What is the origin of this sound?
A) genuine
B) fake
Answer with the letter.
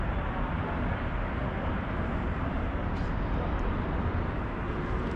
A